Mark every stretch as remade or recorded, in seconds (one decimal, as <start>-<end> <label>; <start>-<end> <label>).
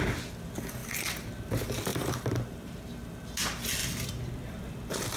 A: 0.0-1.9 recorded; 1.9-3.0 remade; 3.0-5.2 recorded